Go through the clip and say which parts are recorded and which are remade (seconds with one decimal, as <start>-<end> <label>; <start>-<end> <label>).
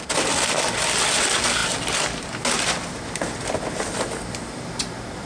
0.0-5.3 recorded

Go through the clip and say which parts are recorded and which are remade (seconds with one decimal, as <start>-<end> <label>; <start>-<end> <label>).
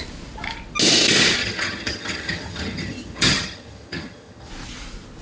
0.0-1.4 recorded; 1.4-4.5 remade; 4.5-5.2 recorded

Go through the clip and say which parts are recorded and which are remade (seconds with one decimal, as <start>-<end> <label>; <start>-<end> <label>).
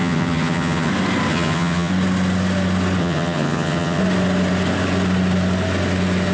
0.0-0.9 remade; 0.9-1.3 recorded; 1.3-1.9 remade; 1.9-3.0 recorded; 3.0-4.0 remade; 4.0-6.3 recorded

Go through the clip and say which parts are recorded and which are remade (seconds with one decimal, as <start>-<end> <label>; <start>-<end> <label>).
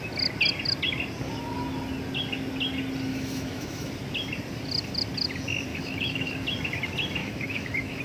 0.0-3.1 recorded; 3.1-3.9 remade; 3.9-5.7 recorded; 5.7-6.3 remade; 6.3-7.2 recorded; 7.2-8.0 remade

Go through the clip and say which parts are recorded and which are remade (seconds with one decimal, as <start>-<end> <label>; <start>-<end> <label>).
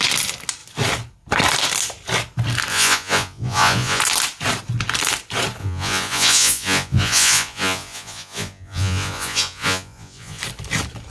0.0-2.7 recorded; 2.7-4.0 remade; 4.0-5.6 recorded; 5.6-10.4 remade; 10.4-11.1 recorded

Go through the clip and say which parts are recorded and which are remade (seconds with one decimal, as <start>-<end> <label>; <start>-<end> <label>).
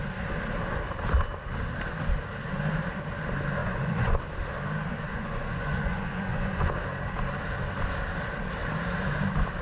0.0-3.6 recorded; 3.6-4.2 remade; 4.2-5.1 recorded; 5.1-6.7 remade; 6.7-9.6 recorded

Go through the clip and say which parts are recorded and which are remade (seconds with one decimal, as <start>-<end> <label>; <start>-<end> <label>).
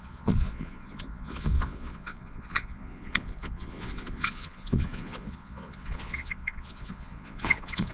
0.0-7.9 remade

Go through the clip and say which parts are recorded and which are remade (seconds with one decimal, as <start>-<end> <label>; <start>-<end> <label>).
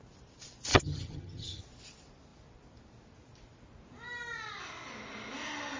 0.0-0.7 recorded; 0.7-1.6 remade; 1.6-5.8 recorded